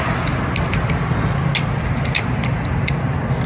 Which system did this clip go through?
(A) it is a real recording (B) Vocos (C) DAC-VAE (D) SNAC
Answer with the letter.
A